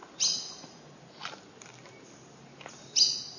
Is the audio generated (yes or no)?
no